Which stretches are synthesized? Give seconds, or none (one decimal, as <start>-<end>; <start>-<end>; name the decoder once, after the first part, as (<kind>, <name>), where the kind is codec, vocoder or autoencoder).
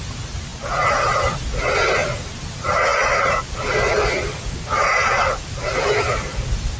none